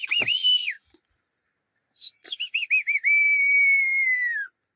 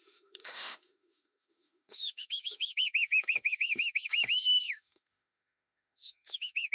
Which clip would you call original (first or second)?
first